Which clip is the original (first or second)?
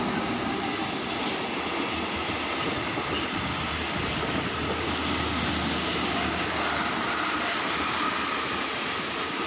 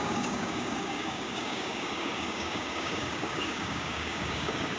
first